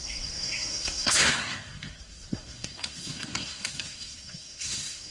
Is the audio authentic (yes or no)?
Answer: no